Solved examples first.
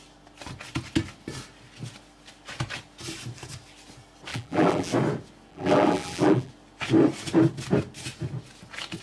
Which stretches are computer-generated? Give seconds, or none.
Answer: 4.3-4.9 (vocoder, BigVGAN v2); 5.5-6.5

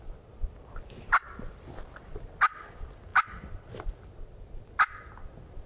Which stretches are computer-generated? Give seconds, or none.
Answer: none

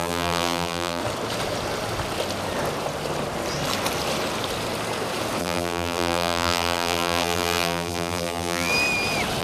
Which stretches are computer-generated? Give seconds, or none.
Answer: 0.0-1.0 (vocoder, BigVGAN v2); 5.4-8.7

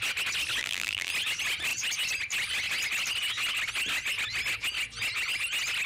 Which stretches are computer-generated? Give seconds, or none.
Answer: 0.6-1.1 (vocoder, BigVGAN v2)

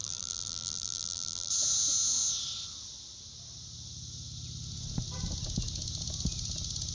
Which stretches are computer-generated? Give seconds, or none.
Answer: 0.0-1.5 (vocoder, BigVGAN v2)

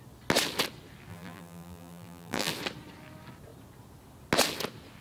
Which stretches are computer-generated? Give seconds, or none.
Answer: 1.1-2.5 (vocoder, BigVGAN v2)

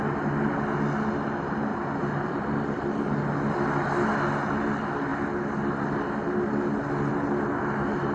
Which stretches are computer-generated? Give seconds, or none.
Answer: 1.7-2.4 (vocoder, BigVGAN v2)